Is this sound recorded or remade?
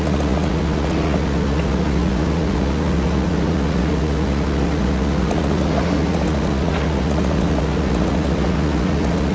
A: remade